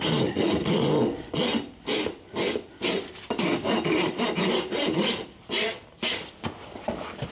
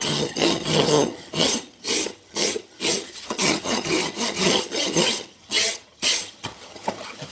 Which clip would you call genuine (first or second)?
first